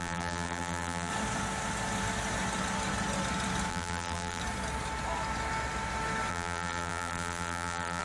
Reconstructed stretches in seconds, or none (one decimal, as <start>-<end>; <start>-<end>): 0.0-1.1; 3.7-4.4; 6.3-8.0